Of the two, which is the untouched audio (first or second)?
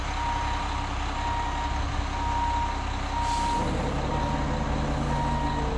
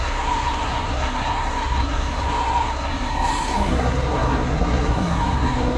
first